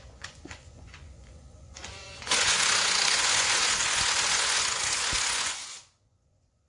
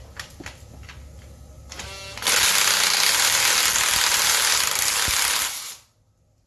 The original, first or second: second